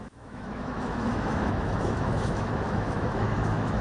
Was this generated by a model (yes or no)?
yes